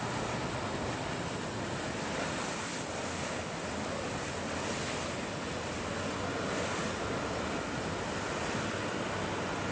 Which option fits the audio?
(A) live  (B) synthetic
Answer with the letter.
A